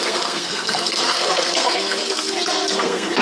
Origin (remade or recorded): remade